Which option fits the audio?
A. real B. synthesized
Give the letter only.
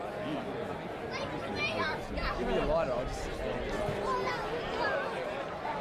A